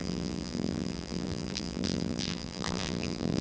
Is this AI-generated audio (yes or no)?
yes